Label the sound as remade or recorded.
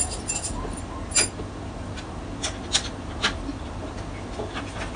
recorded